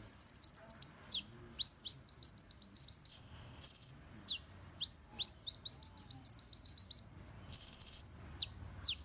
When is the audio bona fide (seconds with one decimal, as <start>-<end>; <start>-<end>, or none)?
0.0-3.1; 3.9-7.5; 8.0-9.0